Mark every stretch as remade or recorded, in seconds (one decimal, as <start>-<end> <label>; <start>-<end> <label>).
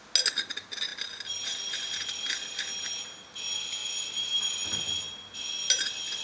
0.0-3.8 recorded; 3.8-5.0 remade; 5.0-6.2 recorded